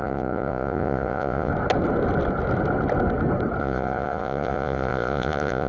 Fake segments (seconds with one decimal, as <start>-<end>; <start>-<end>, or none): 0.0-1.5; 3.6-5.7